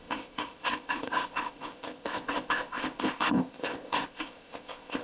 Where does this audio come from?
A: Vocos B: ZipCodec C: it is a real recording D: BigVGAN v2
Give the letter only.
B